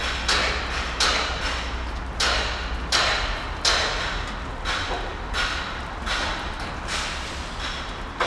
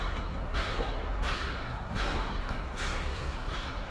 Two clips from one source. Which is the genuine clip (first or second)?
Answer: first